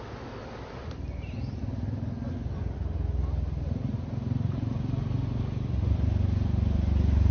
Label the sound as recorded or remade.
recorded